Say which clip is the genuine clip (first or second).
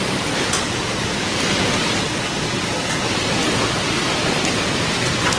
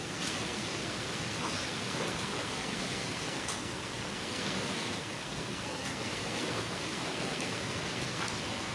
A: first